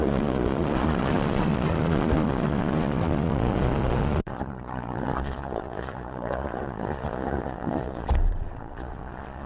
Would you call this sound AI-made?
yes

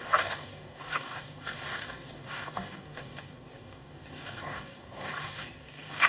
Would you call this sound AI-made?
yes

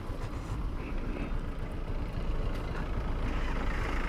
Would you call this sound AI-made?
no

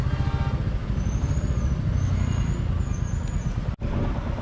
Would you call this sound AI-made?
no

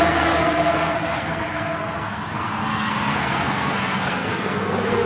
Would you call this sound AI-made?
yes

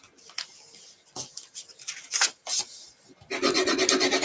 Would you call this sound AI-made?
no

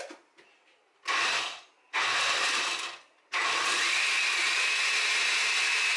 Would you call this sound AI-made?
no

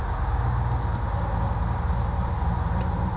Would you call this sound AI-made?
no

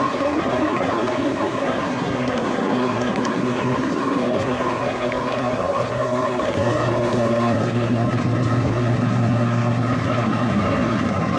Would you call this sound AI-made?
yes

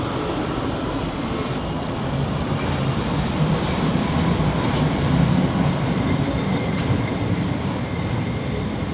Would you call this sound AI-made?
yes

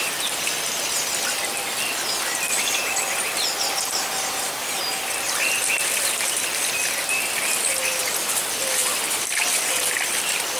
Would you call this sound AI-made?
no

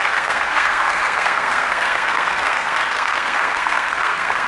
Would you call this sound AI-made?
yes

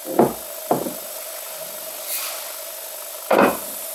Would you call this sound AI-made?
no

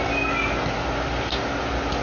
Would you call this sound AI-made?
no